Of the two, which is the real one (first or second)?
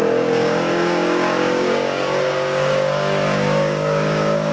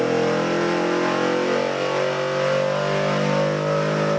second